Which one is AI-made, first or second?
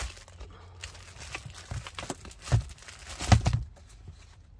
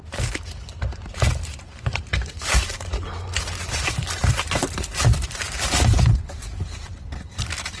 second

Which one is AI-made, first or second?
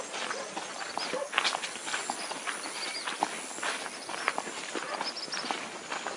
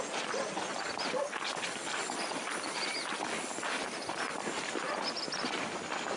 second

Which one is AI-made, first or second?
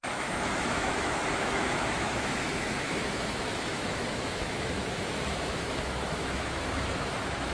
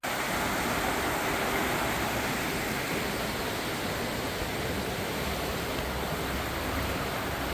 first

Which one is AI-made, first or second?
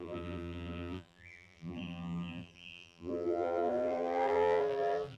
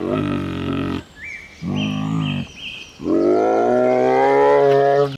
first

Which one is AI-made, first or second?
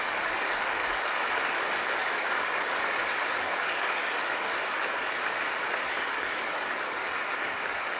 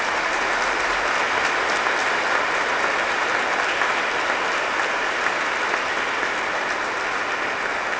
first